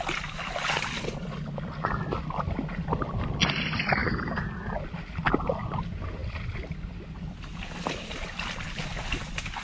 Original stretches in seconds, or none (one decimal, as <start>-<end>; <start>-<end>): 0.0-9.6